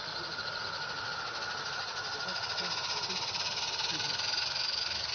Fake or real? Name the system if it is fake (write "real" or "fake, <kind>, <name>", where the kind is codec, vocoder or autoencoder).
real